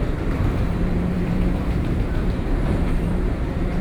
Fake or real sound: fake